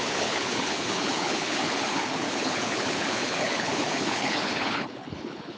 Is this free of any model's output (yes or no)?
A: no